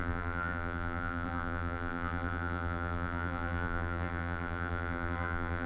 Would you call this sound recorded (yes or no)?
no